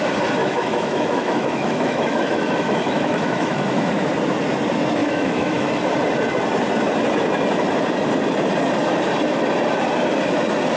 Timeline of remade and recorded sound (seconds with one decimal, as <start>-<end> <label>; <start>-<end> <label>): 0.0-0.4 recorded; 0.4-4.1 remade; 4.1-5.0 recorded; 5.0-5.7 remade; 5.7-10.8 recorded

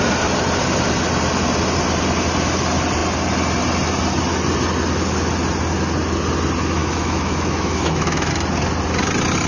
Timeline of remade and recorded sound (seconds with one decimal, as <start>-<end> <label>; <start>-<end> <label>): 0.0-6.8 recorded; 6.8-8.3 remade; 8.3-9.5 recorded

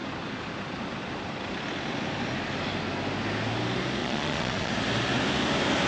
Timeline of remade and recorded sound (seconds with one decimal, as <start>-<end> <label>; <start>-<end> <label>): 0.0-4.0 recorded; 4.0-4.7 remade; 4.7-5.9 recorded

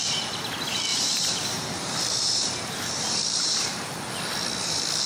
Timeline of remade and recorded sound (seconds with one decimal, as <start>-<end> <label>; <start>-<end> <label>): 0.0-0.9 recorded; 0.9-4.0 remade; 4.0-5.1 recorded

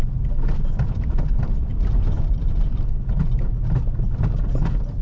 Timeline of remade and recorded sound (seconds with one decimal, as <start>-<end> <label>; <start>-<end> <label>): 0.0-1.7 recorded; 1.7-3.5 remade; 3.5-5.0 recorded